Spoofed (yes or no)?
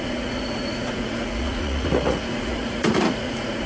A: yes